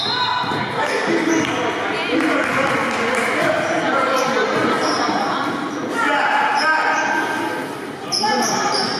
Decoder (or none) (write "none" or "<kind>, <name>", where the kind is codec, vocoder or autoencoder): none